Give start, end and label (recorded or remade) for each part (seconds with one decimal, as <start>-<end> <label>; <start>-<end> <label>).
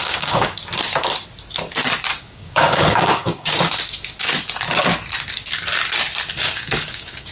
0.0-0.6 remade; 0.6-2.1 recorded; 2.1-3.6 remade; 3.6-6.4 recorded; 6.4-7.3 remade